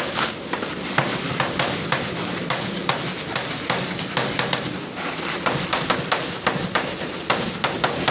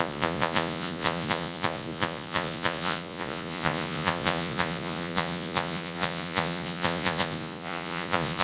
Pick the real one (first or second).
first